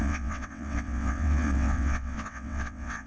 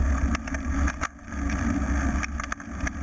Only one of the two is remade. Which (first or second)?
first